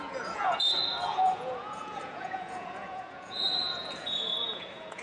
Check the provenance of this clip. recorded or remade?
remade